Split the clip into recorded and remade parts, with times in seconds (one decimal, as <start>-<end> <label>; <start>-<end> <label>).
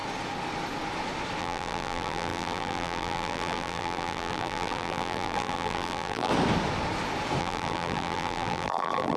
0.0-1.4 recorded; 1.4-6.3 remade; 6.3-7.4 recorded; 7.4-9.2 remade